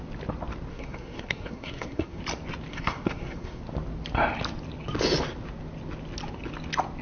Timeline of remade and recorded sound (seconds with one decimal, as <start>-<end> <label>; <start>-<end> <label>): 0.0-0.7 recorded; 0.7-2.2 remade; 2.2-2.7 recorded; 2.7-3.6 remade; 3.6-7.0 recorded